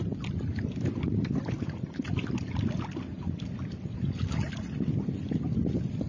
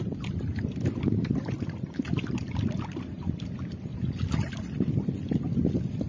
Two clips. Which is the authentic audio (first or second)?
first